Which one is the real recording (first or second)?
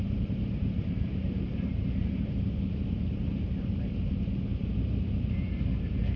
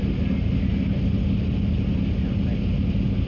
second